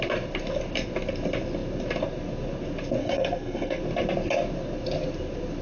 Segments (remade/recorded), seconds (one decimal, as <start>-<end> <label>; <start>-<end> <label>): 0.0-3.0 recorded; 3.0-3.8 remade; 3.8-5.6 recorded